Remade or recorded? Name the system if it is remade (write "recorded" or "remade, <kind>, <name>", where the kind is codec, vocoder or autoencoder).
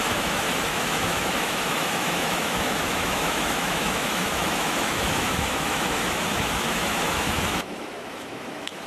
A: remade, autoencoder, DAC-VAE